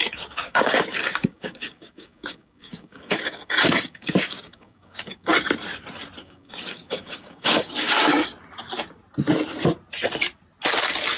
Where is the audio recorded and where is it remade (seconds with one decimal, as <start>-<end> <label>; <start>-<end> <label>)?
0.0-5.3 remade; 5.3-6.2 recorded; 6.2-8.2 remade; 8.2-11.2 recorded

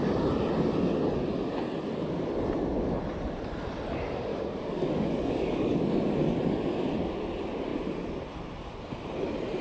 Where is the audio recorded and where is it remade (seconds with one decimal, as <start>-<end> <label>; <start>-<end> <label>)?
0.0-4.3 recorded; 4.3-5.8 remade; 5.8-9.6 recorded

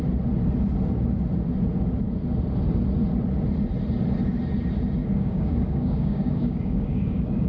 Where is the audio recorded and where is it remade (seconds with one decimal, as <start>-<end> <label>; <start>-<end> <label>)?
0.0-5.0 recorded; 5.0-7.5 remade